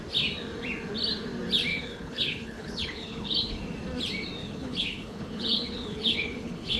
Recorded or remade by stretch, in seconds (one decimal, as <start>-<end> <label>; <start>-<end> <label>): 0.0-1.7 recorded; 1.7-3.6 remade; 3.6-4.4 recorded; 4.4-6.8 remade